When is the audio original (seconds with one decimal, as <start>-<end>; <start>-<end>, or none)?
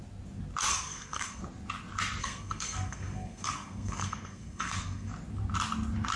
0.0-0.7; 1.4-2.2; 5.1-6.2